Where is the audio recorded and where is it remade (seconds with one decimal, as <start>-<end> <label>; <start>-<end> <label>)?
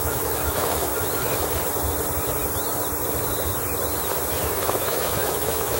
0.0-0.9 remade; 0.9-4.4 recorded; 4.4-5.8 remade